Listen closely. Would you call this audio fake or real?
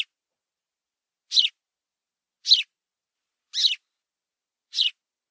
real